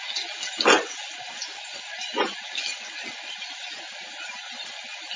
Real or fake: real